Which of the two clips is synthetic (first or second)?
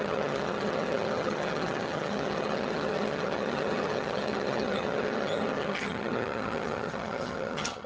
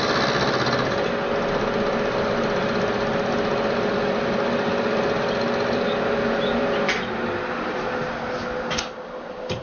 first